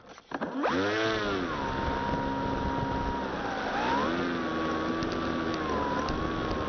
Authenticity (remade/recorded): recorded